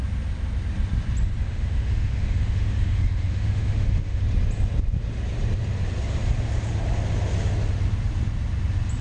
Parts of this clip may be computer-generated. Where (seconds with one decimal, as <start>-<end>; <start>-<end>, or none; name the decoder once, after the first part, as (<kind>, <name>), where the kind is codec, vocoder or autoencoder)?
1.4-4.2 (autoencoder, DAC-VAE)